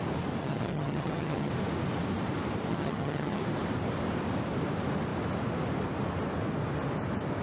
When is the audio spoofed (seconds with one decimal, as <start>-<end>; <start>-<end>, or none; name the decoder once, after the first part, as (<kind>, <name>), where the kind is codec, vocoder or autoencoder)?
0.4-1.5 (vocoder, HiFi-GAN); 2.7-3.4